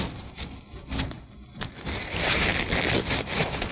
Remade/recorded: recorded